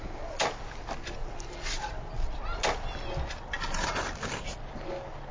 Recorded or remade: recorded